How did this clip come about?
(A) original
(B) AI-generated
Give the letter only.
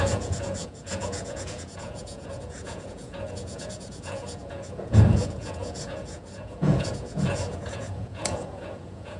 B